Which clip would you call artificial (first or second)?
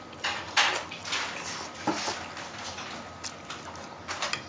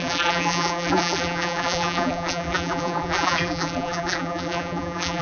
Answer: second